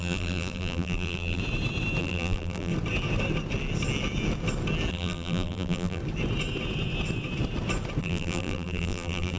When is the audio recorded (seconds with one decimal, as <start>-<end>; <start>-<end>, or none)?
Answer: 1.4-2.0; 2.7-4.9; 6.0-8.0